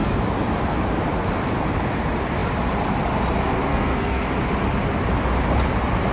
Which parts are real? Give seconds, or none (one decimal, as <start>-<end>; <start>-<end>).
0.0-3.7; 4.2-6.1